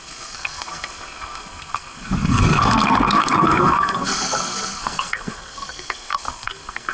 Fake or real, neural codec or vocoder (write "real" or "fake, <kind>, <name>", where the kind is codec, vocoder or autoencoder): fake, codec, SNAC